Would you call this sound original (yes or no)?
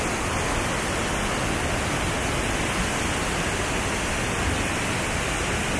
yes